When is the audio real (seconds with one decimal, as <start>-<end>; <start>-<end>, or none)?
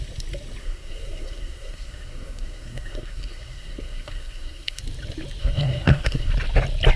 0.0-0.6; 4.8-5.4; 6.3-7.0